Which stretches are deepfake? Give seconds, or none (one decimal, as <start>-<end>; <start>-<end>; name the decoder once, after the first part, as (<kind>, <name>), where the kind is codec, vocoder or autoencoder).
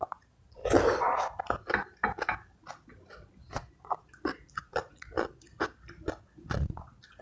0.0-0.6 (vocoder, Vocos); 3.4-5.5; 6.2-7.2